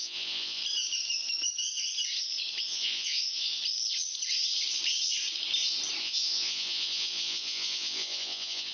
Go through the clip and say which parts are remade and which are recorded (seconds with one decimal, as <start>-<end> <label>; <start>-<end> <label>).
0.0-0.6 remade; 0.6-2.6 recorded; 2.6-3.6 remade; 3.6-6.0 recorded; 6.0-8.7 remade